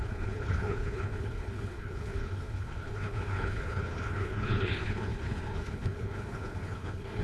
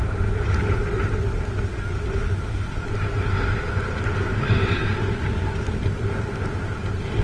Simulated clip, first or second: first